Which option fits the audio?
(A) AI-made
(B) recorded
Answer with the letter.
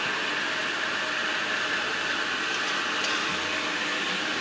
B